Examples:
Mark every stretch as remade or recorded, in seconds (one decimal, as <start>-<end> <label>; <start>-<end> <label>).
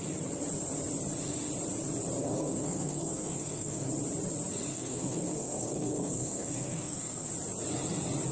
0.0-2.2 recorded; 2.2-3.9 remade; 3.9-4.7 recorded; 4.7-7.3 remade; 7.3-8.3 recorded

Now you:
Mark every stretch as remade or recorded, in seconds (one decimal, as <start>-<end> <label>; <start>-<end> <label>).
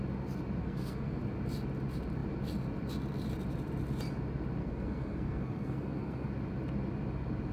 0.0-0.6 recorded; 0.6-1.2 remade; 1.2-4.6 recorded; 4.6-6.3 remade; 6.3-7.5 recorded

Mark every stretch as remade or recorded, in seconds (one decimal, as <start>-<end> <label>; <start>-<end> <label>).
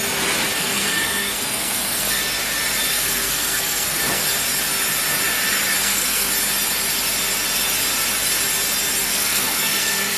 0.0-0.6 recorded; 0.6-2.2 remade; 2.2-2.9 recorded; 2.9-4.2 remade; 4.2-5.8 recorded; 5.8-6.3 remade; 6.3-9.0 recorded; 9.0-10.2 remade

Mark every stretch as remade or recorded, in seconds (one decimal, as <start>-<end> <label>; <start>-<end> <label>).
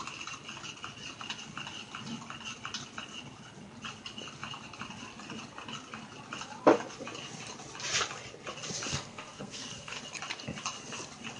0.0-8.9 recorded; 8.9-10.0 remade; 10.0-11.4 recorded